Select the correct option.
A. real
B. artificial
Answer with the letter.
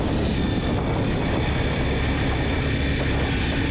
A